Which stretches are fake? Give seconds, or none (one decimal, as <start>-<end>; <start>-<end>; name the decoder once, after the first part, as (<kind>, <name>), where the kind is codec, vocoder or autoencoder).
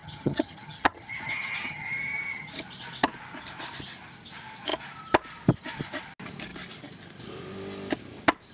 0.0-2.5 (vocoder, HiFi-GAN)